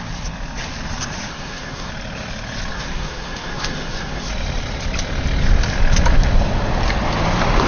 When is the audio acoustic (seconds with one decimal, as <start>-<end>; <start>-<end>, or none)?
0.0-1.3; 1.9-2.7; 4.3-7.7